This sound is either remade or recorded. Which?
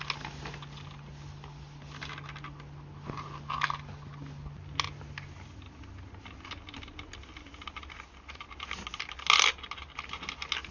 recorded